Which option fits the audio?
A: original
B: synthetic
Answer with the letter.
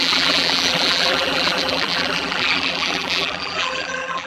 B